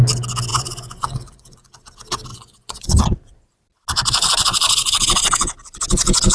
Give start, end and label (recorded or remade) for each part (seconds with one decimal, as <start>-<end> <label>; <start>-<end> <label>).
0.0-0.5 recorded; 0.5-1.7 remade; 1.7-2.3 recorded; 2.3-3.0 remade; 3.0-6.3 recorded